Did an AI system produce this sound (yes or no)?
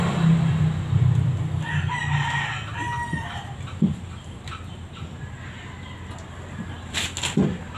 no